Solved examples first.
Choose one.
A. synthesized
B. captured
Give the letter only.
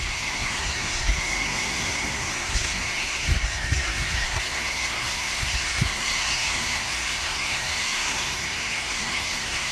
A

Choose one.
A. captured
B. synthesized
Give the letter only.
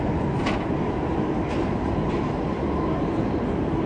A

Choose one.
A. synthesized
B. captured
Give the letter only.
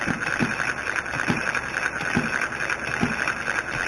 B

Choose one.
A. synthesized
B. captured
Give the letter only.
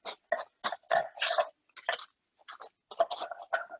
B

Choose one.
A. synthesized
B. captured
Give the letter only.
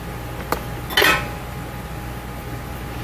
B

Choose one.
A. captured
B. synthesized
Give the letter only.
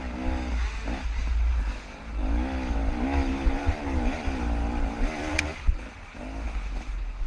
A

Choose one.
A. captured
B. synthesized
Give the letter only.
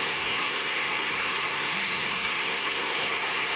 B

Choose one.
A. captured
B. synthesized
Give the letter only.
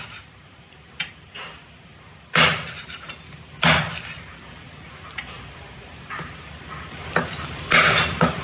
A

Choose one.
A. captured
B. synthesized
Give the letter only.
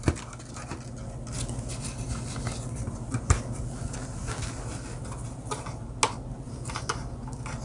A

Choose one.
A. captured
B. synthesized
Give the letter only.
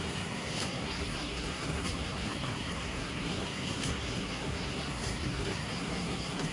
B